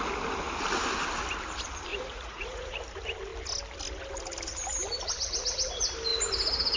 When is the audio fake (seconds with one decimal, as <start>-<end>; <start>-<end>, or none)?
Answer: 1.9-2.8